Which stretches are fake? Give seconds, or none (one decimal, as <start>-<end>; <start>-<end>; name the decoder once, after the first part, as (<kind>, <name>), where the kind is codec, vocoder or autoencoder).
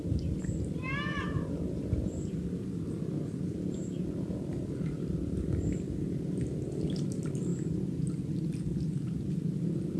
none